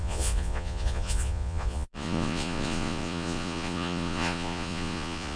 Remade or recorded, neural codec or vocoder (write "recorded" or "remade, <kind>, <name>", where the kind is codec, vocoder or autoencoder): remade, vocoder, Vocos